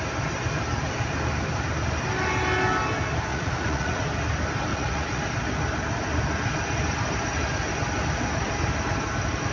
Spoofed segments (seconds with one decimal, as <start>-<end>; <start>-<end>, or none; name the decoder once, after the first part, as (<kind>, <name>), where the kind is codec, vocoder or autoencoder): 3.3-4.0 (vocoder, Vocos); 4.7-5.2

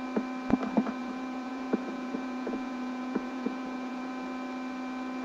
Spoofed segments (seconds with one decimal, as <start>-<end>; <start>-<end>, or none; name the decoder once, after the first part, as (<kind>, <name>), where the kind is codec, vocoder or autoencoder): 1.0-4.1 (vocoder, Vocos)